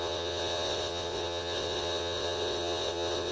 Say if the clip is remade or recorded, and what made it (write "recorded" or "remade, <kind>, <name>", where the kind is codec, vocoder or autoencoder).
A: remade, vocoder, WaveNeXt